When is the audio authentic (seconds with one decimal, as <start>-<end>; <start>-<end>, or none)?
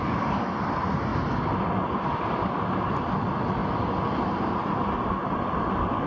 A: 0.0-1.1; 2.7-6.1